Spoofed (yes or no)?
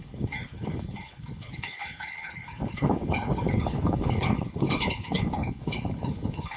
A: yes